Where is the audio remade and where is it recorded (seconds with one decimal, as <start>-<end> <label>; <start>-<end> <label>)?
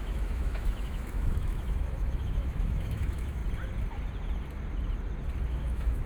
0.0-3.4 remade; 3.4-5.5 recorded; 5.5-6.1 remade